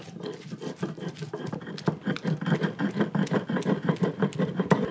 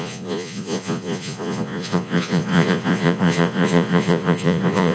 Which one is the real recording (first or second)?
first